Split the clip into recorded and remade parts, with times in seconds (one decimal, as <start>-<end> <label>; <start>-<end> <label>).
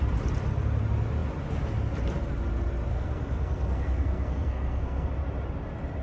0.0-2.9 recorded; 2.9-5.1 remade; 5.1-6.0 recorded